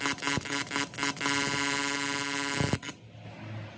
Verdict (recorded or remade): recorded